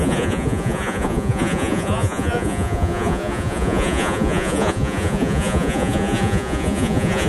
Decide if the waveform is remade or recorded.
remade